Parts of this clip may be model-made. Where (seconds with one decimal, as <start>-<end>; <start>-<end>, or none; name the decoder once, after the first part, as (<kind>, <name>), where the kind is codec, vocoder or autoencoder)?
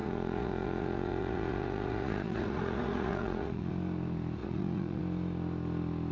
0.0-3.7 (vocoder, Vocos); 4.4-5.0